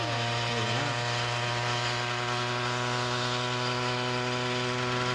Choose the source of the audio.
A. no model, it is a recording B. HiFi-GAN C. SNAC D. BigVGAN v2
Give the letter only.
A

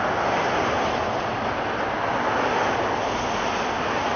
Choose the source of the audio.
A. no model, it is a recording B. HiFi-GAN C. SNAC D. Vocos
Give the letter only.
A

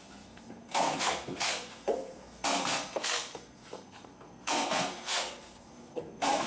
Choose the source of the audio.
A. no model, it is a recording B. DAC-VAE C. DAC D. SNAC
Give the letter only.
D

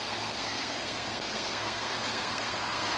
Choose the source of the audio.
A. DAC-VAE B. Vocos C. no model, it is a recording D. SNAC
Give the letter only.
D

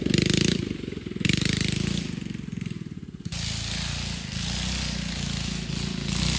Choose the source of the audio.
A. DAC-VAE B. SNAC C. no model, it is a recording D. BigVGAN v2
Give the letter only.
C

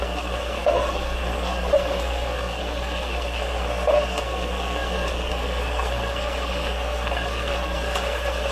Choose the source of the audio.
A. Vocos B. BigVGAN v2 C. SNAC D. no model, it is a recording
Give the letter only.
C